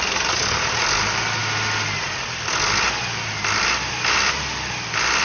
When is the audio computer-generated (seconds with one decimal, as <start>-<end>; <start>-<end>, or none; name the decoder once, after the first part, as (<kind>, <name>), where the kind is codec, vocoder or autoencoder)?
none